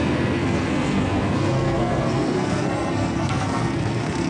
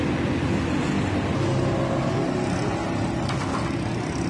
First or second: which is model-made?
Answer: first